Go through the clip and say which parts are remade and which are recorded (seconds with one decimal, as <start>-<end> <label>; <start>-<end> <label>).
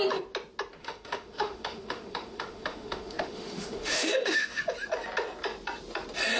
0.0-0.8 recorded; 0.8-4.6 remade; 4.6-6.4 recorded